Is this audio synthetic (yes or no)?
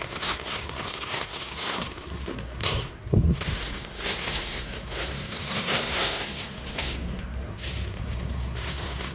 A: yes